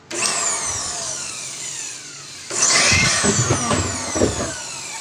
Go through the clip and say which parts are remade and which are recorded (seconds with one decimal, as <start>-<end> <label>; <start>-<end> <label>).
0.0-0.8 recorded; 0.8-1.6 remade; 1.6-2.0 recorded; 2.0-3.2 remade; 3.2-5.0 recorded